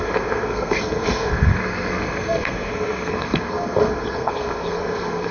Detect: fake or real fake